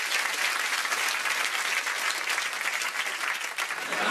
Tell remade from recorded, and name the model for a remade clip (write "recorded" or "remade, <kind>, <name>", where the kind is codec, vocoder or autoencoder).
recorded